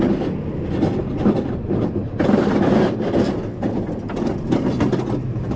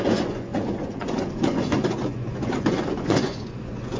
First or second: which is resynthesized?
second